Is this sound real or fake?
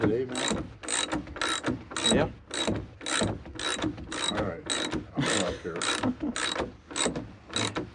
real